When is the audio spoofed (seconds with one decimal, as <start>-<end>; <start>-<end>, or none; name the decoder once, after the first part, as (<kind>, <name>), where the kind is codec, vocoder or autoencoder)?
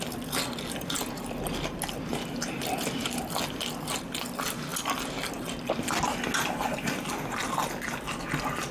none